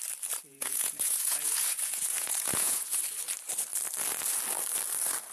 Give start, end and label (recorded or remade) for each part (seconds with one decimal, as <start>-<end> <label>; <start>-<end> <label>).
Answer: 0.0-0.5 recorded; 0.5-3.0 remade; 3.0-5.3 recorded